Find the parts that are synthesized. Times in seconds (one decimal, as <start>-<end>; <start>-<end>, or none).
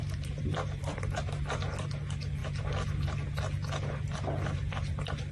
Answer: 0.0-1.0